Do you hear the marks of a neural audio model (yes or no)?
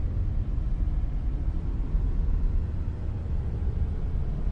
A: no